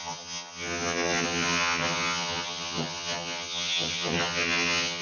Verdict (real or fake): fake